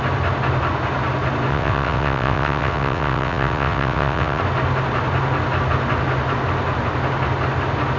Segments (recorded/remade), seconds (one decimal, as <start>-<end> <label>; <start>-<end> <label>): 0.0-1.5 recorded; 1.5-4.4 remade; 4.4-8.0 recorded